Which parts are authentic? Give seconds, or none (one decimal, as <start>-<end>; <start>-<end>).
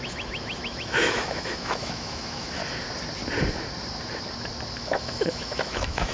2.6-4.8